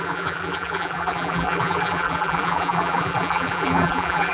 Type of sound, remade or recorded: remade